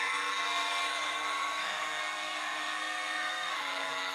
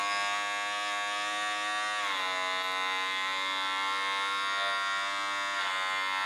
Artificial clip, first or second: first